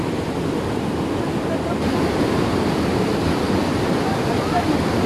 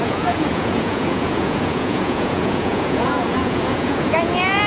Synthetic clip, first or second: second